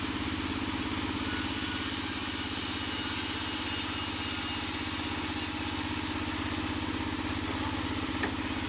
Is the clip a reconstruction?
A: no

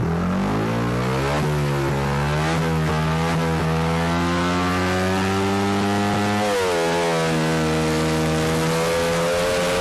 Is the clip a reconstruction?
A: no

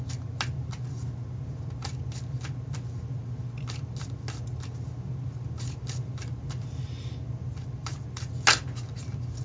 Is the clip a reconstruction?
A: no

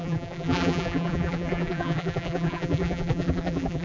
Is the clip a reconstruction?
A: yes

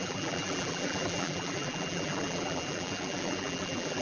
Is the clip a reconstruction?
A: yes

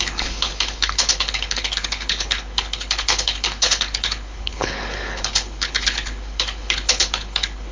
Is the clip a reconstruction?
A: yes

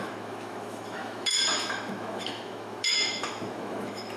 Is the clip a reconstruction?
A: yes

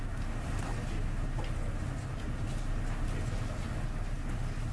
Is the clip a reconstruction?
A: no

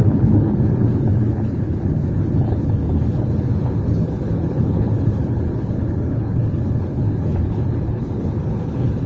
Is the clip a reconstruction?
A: yes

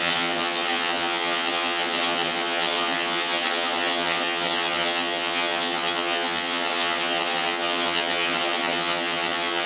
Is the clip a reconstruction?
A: yes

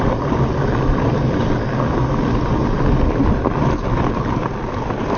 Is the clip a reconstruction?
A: no